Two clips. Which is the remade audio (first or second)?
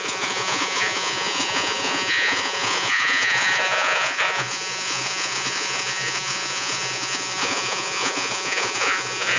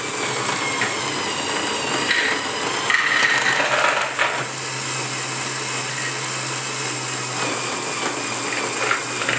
first